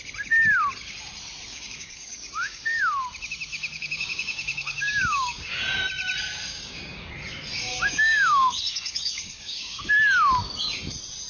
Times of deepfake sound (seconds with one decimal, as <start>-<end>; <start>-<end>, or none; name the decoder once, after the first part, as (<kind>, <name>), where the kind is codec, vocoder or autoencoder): 1.5-2.8 (codec, DAC); 3.5-5.5; 6.5-7.1; 7.7-9.8